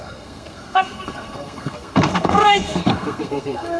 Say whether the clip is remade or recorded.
remade